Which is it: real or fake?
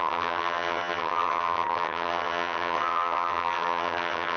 fake